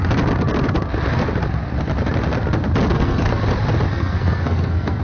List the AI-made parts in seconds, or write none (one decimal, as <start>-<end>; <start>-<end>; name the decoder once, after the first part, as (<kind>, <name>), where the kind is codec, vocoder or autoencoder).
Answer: 2.9-3.4 (codec, SNAC); 3.9-5.0